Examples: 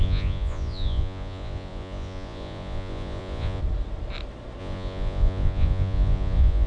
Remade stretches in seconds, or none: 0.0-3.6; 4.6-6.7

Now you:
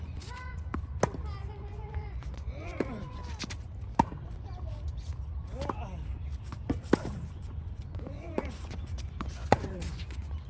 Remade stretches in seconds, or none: 0.0-0.7; 1.5-3.2; 7.3-10.5